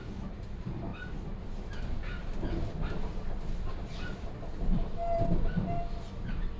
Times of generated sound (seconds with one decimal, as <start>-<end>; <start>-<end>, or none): none